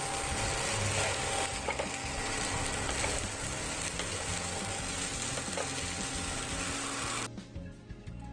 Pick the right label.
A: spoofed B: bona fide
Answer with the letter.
B